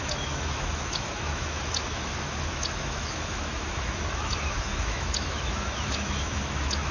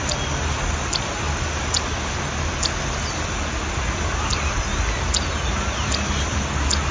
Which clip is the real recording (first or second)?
second